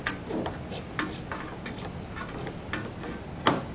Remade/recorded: recorded